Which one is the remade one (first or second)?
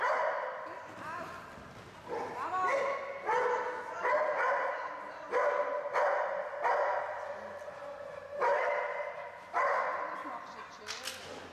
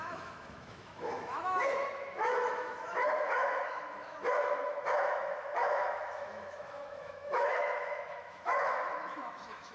second